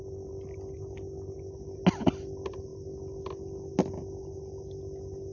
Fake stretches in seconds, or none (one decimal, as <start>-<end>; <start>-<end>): none